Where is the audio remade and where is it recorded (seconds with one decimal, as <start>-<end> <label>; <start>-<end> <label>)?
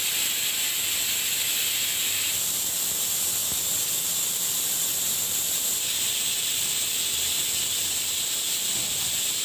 0.0-9.4 recorded